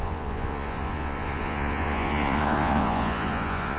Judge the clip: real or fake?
fake